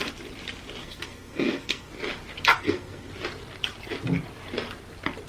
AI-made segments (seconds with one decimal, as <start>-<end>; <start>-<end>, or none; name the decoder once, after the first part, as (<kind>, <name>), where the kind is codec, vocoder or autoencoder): 0.8-1.9 (codec, SNAC); 2.5-3.1